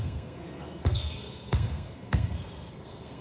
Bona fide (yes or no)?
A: no